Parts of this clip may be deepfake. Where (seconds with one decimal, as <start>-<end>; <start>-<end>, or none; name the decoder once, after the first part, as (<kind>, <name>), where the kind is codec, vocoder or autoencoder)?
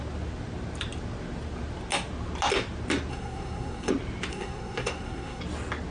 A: 3.1-3.9 (codec, SNAC); 4.3-5.4